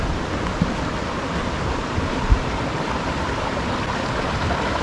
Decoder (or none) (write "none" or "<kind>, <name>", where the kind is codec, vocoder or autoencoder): vocoder, BigVGAN v2